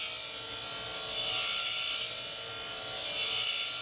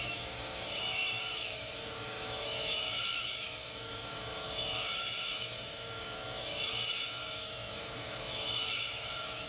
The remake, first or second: second